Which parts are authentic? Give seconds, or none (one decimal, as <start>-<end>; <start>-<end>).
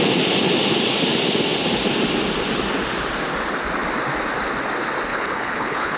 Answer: 0.0-5.1